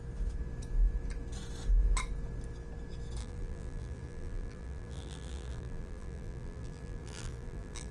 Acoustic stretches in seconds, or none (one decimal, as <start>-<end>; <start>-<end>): 0.0-3.2